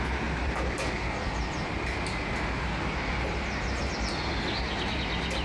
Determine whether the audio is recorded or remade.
recorded